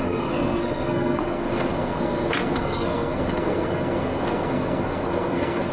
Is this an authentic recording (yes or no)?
no